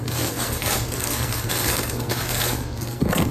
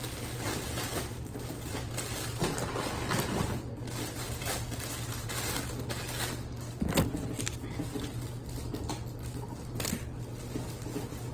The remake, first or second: first